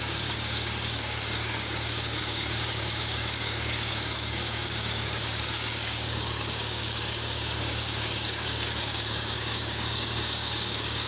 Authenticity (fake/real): fake